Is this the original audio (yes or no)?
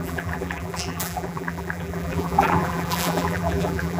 no